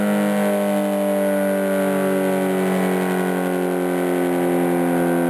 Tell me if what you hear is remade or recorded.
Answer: recorded